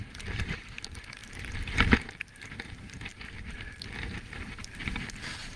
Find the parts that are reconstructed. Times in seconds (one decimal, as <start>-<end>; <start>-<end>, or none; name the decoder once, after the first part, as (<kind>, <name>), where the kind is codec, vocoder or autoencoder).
0.0-3.1 (vocoder, BigVGAN v2); 3.9-5.6